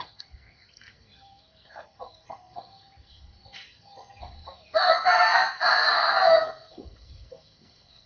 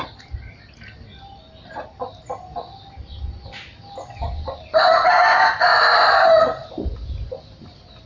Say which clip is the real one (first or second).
second